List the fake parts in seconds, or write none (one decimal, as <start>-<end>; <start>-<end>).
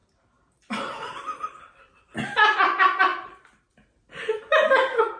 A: none